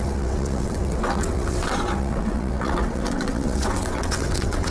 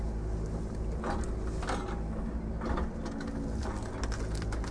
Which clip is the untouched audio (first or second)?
second